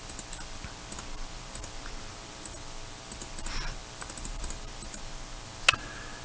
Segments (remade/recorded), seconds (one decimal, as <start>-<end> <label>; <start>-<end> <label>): 0.0-6.2 recorded